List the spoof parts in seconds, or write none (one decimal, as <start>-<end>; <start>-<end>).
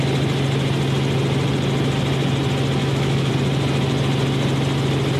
2.8-3.3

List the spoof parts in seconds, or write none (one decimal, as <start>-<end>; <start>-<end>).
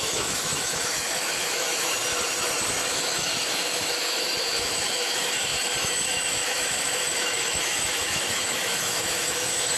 0.0-2.0; 2.9-9.8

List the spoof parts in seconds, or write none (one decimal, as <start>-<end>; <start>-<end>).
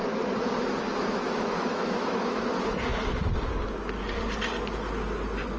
1.0-2.4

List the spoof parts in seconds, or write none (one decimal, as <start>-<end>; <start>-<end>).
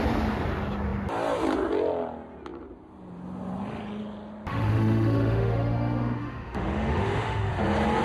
4.5-7.5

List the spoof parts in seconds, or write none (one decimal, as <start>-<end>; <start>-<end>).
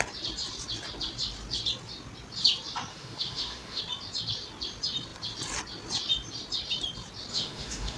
2.9-3.8; 7.3-8.0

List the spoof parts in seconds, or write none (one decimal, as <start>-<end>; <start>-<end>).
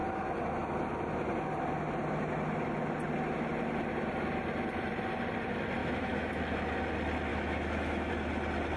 5.8-6.4; 7.3-8.1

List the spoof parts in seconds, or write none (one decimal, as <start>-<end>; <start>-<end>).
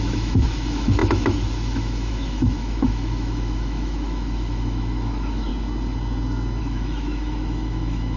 0.0-5.5; 6.6-8.2